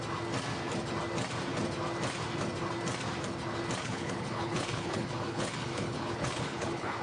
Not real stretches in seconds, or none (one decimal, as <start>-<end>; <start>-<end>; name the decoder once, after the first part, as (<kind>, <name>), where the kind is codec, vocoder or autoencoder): 3.8-7.0 (codec, HILCodec)